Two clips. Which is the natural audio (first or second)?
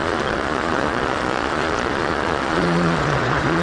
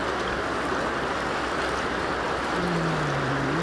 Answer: second